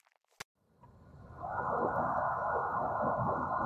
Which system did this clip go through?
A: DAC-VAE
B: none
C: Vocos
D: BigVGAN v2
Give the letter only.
B